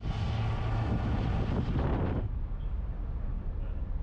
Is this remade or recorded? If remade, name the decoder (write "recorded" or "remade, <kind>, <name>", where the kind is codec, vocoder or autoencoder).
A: recorded